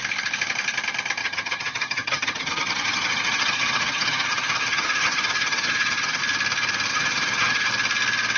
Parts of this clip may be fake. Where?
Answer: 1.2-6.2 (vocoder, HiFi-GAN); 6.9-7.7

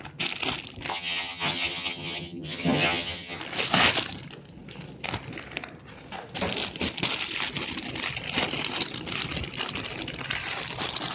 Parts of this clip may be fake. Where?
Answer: 0.9-3.4 (vocoder, HiFi-GAN)